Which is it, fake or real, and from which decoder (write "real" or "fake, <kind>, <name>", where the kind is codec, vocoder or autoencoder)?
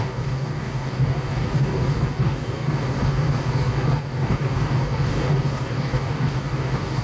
fake, codec, DAC